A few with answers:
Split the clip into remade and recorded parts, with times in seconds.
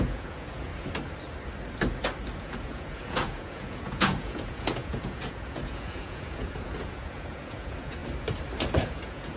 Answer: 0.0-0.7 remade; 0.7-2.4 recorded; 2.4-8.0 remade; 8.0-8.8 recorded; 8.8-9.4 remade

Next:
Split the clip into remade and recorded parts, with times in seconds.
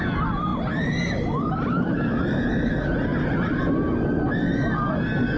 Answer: 0.0-5.4 recorded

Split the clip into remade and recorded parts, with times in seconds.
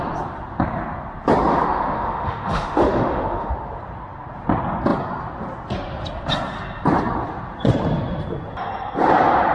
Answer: 0.0-1.5 recorded; 1.5-3.5 remade; 3.5-9.5 recorded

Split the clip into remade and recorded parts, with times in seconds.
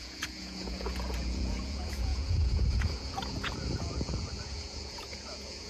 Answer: 0.0-5.7 remade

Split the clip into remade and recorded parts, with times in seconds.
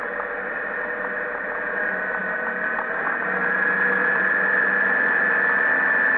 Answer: 0.0-6.2 recorded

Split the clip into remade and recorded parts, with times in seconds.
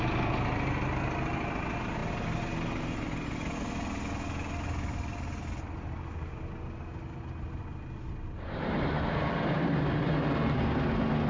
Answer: 0.0-11.3 recorded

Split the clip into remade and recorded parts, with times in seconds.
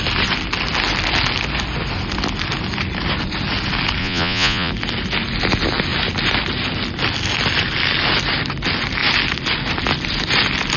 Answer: 0.0-4.0 recorded; 4.0-4.7 remade; 4.7-10.8 recorded